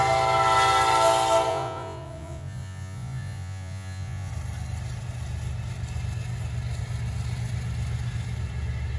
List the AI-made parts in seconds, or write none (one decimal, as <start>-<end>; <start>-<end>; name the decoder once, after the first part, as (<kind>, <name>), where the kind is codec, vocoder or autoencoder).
1.5-4.3 (vocoder, Vocos)